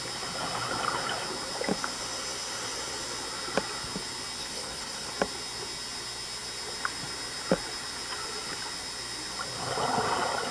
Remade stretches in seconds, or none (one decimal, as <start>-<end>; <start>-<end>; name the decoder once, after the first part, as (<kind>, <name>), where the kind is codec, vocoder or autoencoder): 4.4-5.1 (codec, SNAC)